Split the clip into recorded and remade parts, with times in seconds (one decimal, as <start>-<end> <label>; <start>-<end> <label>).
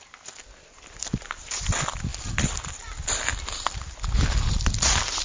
0.0-5.2 recorded